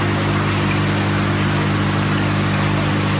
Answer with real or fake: real